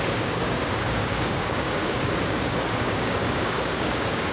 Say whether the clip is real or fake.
fake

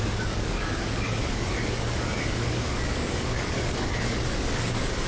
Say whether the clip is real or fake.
fake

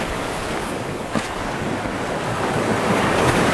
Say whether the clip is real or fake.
fake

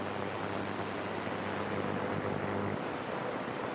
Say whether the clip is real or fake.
real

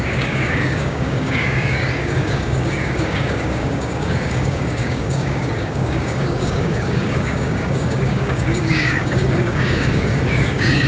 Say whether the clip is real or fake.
fake